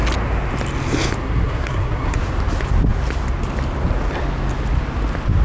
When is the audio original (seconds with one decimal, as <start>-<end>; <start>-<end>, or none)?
0.0-1.2; 2.2-5.4